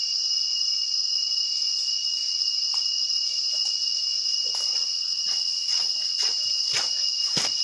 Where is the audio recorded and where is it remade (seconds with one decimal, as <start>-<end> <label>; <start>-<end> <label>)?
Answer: 0.0-4.7 recorded; 4.7-6.3 remade; 6.3-7.6 recorded